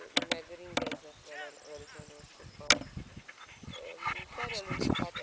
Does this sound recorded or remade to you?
recorded